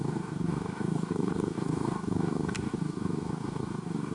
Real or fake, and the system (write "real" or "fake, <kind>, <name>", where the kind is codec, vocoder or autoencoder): fake, codec, DAC